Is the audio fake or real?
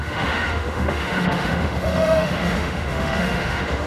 fake